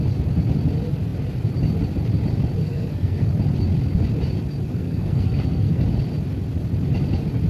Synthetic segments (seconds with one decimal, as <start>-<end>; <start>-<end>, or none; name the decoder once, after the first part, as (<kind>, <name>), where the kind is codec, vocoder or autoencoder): 2.6-3.3 (codec, SNAC); 4.7-5.8